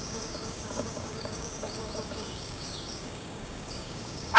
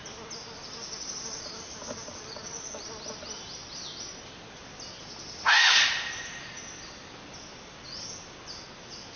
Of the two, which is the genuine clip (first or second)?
second